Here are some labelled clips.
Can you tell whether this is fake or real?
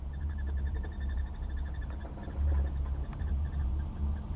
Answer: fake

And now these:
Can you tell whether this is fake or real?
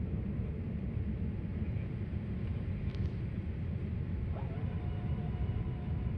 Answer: real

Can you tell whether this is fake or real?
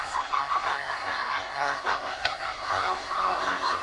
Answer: fake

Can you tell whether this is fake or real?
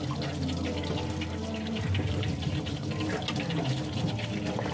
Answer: real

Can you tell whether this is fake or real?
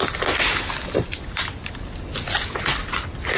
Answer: real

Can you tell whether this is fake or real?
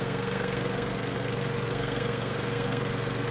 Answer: fake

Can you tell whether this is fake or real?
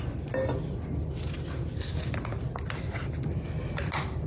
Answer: real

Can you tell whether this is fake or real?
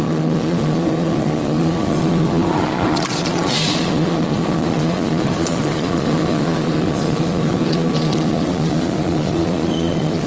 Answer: fake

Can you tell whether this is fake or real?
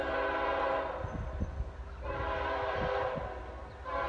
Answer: real